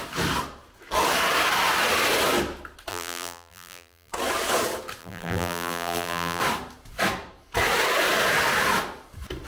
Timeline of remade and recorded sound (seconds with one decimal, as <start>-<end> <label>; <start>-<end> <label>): 0.0-2.9 recorded; 2.9-4.1 remade; 4.1-5.0 recorded; 5.0-6.4 remade; 6.4-9.5 recorded